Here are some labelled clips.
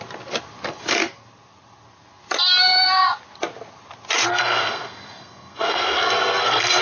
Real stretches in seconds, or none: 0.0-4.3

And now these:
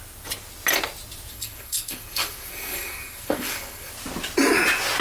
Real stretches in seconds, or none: 0.0-1.3; 3.9-5.0